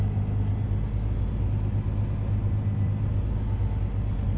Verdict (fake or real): real